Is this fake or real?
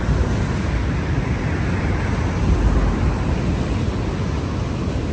real